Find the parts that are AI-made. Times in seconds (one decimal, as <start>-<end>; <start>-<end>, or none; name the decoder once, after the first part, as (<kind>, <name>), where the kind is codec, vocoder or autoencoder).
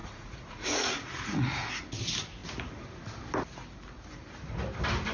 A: 0.0-1.7 (vocoder, Vocos)